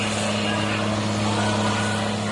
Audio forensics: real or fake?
real